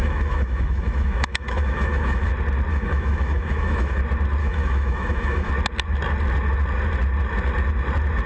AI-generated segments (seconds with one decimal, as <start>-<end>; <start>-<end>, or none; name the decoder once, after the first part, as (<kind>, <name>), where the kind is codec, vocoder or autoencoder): 0.0-2.3 (autoencoder, DAC-VAE); 2.7-4.0; 4.4-5.5